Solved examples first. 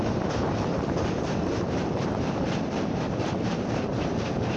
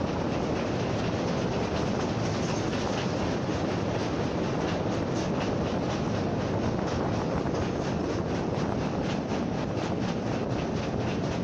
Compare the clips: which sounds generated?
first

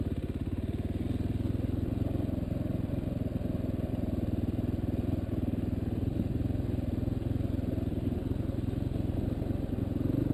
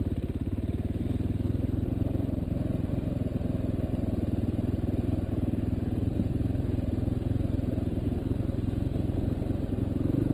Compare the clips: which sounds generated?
second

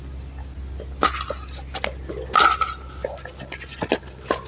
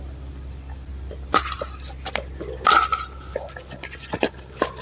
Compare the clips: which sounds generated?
second